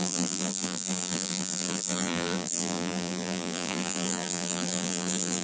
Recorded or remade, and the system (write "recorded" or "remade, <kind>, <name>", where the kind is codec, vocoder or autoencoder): remade, vocoder, BigVGAN v2